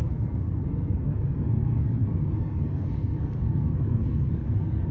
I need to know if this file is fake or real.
fake